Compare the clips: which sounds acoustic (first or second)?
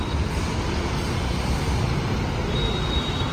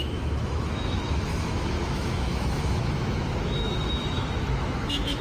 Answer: first